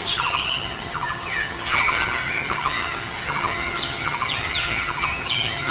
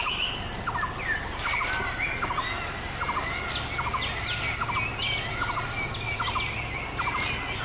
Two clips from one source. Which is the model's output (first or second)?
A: first